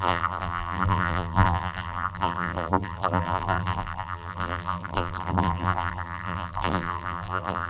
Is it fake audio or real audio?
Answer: fake